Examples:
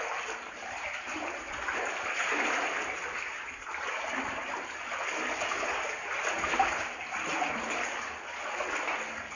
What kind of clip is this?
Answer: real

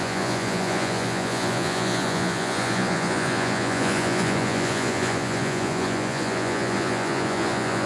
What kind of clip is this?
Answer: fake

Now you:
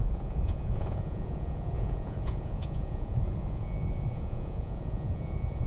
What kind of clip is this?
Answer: fake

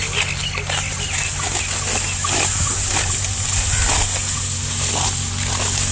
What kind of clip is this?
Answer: real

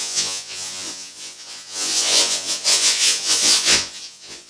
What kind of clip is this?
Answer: fake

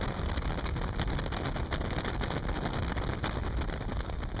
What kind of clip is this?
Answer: real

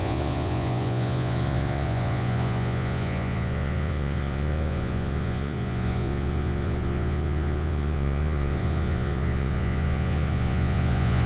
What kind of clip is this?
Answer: fake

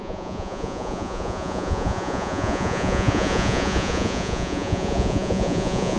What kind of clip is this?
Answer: fake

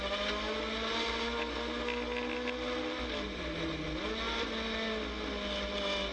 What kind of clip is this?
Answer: real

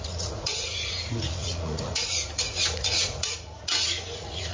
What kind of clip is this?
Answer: fake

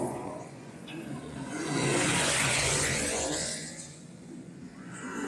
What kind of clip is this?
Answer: fake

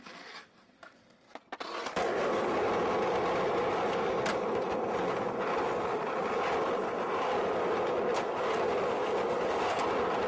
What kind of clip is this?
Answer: real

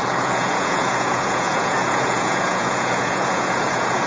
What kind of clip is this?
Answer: fake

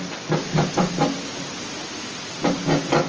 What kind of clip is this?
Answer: real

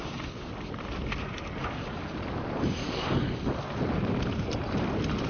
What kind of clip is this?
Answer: real